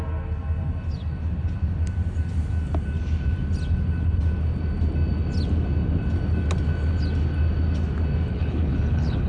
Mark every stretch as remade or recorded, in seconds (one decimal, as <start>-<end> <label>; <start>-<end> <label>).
0.0-8.3 recorded; 8.3-9.3 remade